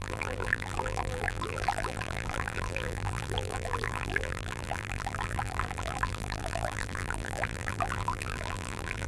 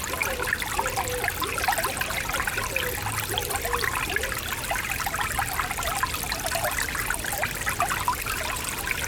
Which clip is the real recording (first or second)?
second